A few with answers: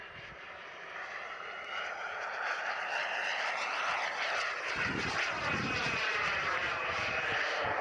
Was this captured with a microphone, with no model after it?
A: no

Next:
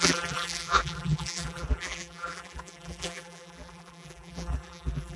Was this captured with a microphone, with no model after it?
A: no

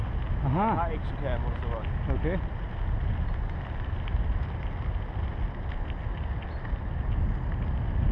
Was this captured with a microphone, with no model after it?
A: yes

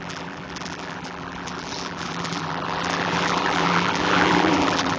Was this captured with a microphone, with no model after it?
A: no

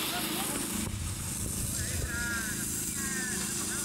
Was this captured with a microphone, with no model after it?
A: yes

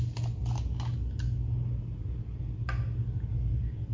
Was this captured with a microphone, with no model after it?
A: yes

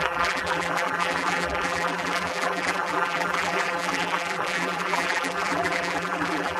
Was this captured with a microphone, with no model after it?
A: no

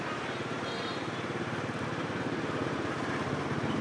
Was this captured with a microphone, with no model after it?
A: no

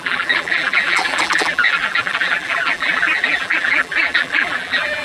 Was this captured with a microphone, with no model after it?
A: no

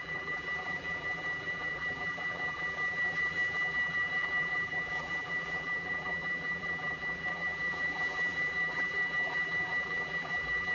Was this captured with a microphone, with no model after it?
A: no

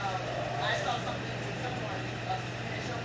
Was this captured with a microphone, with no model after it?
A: no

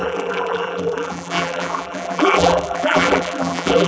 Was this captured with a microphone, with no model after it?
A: no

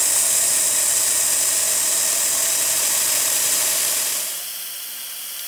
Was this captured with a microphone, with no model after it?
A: no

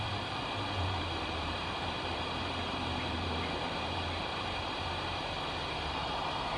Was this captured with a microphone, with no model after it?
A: no